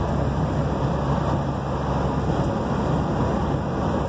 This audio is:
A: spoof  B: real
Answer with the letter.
B